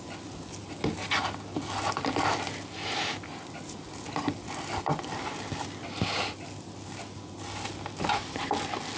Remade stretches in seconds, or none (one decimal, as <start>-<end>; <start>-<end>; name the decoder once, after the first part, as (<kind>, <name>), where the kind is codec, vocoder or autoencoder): none